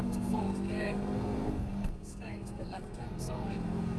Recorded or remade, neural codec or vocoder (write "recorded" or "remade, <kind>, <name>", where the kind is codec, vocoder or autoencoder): remade, codec, SNAC